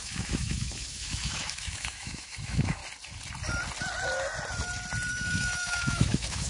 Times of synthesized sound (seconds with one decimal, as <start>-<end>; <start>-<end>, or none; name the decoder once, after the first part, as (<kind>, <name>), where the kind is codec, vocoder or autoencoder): 0.0-2.8 (autoencoder, DAC-VAE); 5.1-6.5